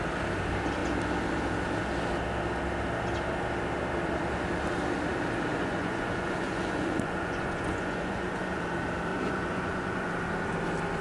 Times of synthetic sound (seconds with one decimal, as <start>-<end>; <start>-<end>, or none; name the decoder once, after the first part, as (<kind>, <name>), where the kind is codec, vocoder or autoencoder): 5.5-8.6 (vocoder, Vocos); 9.1-10.1